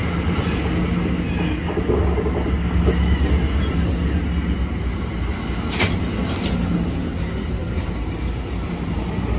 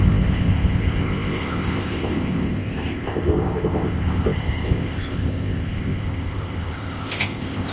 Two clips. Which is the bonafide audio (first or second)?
first